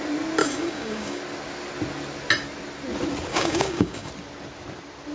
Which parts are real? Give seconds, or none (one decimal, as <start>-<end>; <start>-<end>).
0.0-0.4; 1.2-3.3; 4.1-5.1